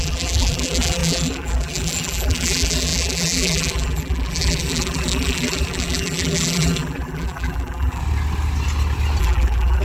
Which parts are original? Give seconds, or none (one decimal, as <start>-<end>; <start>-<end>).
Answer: 8.0-9.2